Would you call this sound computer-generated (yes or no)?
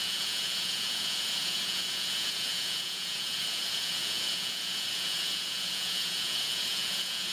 yes